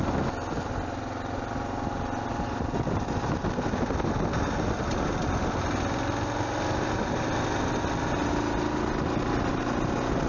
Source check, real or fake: real